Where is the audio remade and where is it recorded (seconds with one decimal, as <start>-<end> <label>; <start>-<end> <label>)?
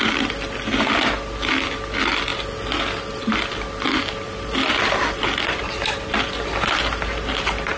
0.0-7.8 recorded